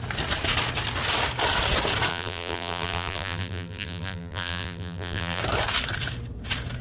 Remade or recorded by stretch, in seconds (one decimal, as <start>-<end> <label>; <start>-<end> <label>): 0.0-2.1 recorded; 2.1-5.4 remade; 5.4-6.8 recorded